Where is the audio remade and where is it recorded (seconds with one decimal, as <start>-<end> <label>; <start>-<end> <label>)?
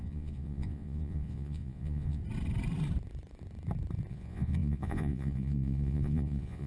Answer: 0.0-2.2 remade; 2.2-4.1 recorded; 4.1-6.7 remade